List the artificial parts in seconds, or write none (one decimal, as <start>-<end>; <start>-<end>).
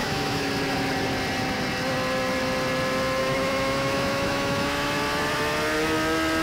0.0-0.5; 3.2-4.9